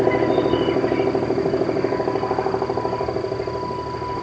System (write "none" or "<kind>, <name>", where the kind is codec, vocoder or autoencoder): none